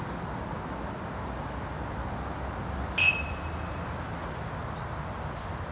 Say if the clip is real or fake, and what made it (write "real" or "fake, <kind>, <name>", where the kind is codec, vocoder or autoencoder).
real